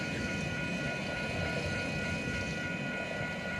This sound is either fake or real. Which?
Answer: real